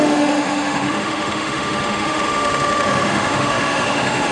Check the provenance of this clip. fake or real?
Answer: fake